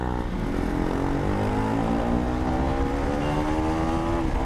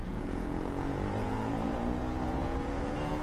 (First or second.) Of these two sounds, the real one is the first